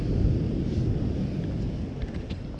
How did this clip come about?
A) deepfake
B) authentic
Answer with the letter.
B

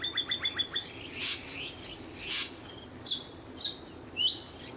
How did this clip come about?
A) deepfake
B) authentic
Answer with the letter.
B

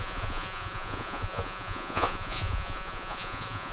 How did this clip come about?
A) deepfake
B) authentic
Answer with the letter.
A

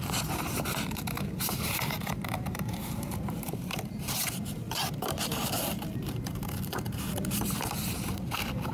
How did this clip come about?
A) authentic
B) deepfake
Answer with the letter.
B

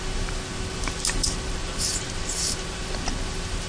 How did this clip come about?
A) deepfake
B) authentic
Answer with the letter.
B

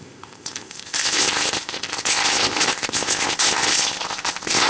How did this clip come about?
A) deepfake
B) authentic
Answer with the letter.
A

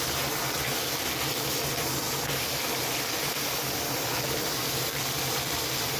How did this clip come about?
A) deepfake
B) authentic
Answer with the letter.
B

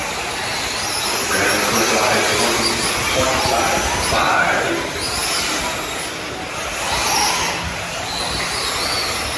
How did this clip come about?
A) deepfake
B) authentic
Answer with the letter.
B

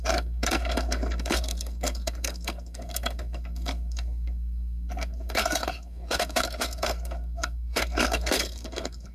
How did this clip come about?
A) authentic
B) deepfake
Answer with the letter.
B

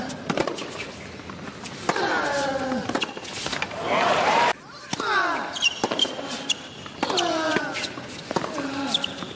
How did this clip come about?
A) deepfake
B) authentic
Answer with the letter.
B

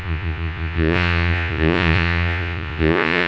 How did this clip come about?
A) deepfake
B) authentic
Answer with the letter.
A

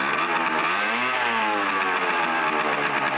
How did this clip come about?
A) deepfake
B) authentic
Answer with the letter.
A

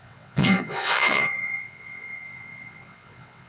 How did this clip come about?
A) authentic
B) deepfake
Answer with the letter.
B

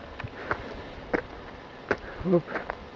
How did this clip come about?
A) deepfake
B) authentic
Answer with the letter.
B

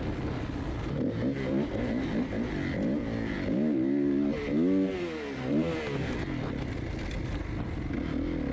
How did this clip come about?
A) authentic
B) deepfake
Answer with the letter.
A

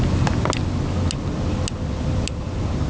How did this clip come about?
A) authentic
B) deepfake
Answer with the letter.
A